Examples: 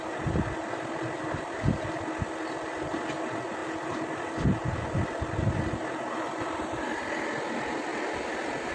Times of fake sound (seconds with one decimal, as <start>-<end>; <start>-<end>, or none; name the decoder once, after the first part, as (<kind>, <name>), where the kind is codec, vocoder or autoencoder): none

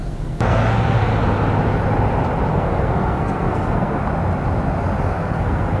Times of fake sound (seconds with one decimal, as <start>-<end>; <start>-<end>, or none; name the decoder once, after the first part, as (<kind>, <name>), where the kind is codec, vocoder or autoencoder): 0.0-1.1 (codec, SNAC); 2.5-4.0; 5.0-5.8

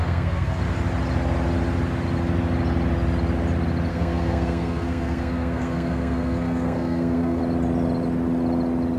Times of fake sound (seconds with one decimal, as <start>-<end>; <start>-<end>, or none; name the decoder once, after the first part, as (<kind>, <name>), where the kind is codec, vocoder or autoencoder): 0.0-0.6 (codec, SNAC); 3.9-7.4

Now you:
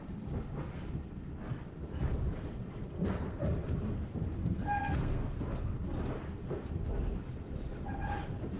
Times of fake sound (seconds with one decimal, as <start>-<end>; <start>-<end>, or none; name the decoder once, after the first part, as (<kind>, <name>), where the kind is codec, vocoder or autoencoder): 2.9-3.4 (codec, SNAC); 4.4-5.4

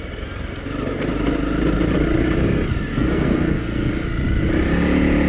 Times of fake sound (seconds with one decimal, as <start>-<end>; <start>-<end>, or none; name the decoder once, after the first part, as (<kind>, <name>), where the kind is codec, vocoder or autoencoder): 2.9-3.9 (codec, SNAC)